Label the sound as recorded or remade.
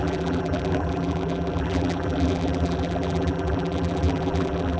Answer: remade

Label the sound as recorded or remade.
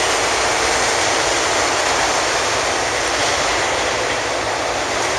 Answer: recorded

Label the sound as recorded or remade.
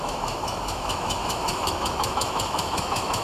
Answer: remade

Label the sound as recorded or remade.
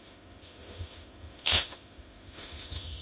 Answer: remade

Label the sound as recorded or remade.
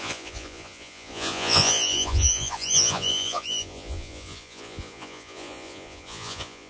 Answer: remade